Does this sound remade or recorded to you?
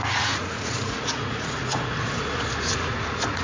remade